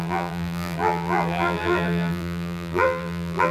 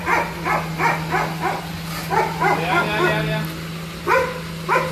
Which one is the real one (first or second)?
second